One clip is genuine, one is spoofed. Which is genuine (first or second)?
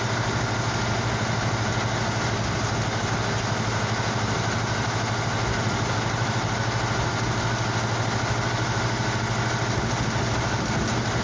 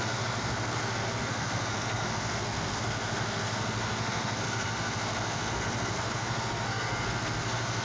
first